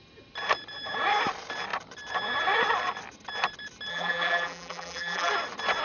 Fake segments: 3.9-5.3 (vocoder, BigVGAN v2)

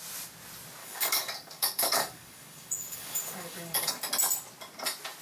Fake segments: 0.8-3.9 (codec, DAC)

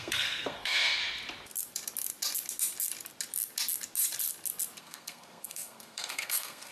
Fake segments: 0.0-1.0 (codec, SNAC); 4.8-6.7

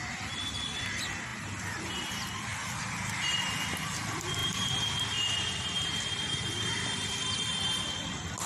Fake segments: 1.3-1.9 (vocoder, BigVGAN v2); 2.5-3.4; 4.4-7.8

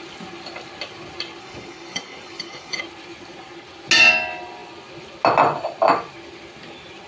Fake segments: 1.4-2.8 (codec, DAC)

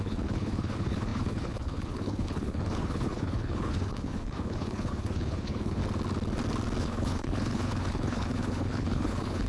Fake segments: 0.0-5.8 (codec, HILCodec); 6.8-9.5